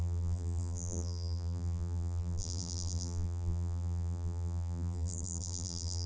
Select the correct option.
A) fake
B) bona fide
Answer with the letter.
A